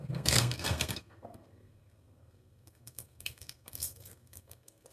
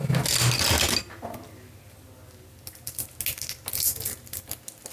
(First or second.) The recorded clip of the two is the second